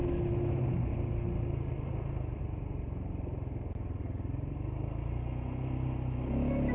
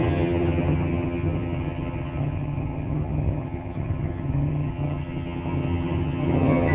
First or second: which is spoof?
second